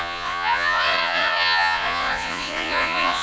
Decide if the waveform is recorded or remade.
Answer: remade